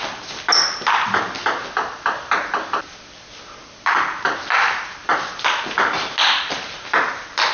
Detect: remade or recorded recorded